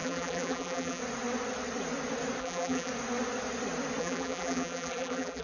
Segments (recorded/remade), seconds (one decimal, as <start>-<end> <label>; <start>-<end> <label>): 0.0-1.0 remade; 1.0-2.4 recorded; 2.4-2.9 remade; 2.9-4.0 recorded; 4.0-5.4 remade